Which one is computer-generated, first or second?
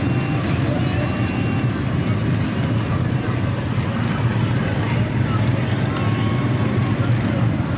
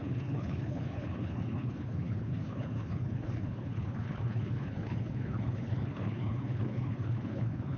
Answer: second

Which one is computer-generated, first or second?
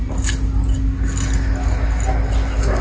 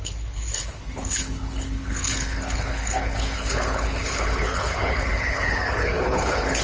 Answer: second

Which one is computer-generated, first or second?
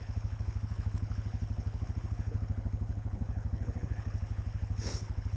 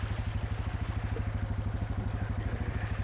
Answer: first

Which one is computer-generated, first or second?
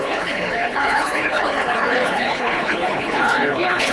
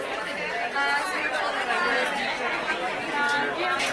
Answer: first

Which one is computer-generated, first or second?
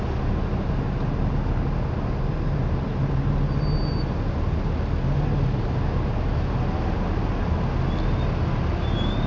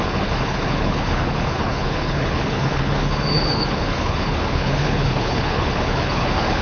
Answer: second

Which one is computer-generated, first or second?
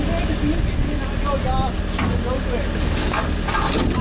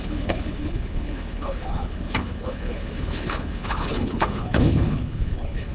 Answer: second